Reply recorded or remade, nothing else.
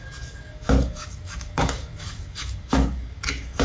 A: remade